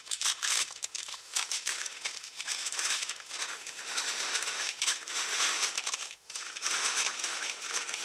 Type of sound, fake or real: fake